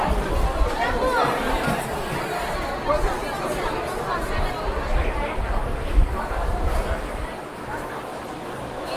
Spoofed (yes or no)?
no